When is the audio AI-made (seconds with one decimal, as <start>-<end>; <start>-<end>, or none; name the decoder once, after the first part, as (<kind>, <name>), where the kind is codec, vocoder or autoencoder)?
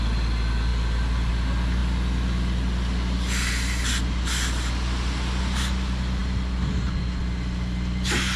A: none